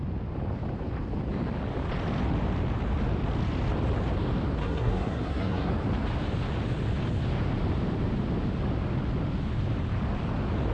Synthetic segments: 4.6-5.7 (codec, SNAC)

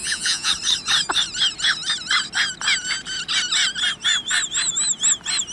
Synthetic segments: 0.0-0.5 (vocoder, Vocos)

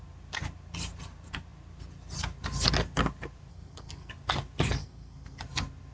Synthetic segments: 3.5-4.1 (codec, SNAC); 4.8-5.4

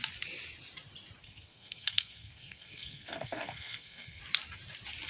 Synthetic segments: 1.2-4.2 (codec, SNAC)

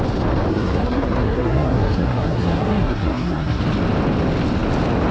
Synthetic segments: 0.5-3.6 (codec, SNAC)

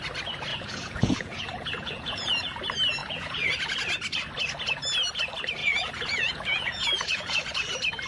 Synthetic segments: 0.5-2.3 (vocoder, Vocos); 3.0-3.5; 5.6-7.4